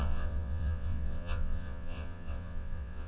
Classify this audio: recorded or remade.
remade